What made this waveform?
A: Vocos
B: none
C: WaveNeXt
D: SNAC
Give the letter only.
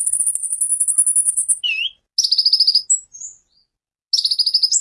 B